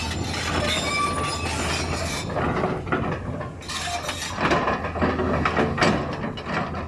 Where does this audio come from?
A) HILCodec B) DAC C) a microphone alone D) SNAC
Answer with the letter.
C